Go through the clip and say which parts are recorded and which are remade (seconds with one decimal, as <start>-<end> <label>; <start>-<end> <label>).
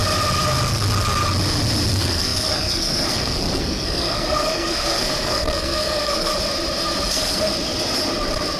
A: 0.0-1.9 recorded; 1.9-6.3 remade; 6.3-7.1 recorded; 7.1-7.5 remade; 7.5-8.6 recorded